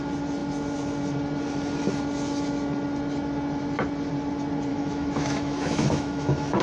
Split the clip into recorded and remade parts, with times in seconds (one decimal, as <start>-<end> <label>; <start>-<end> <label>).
0.0-4.7 recorded; 4.7-6.6 remade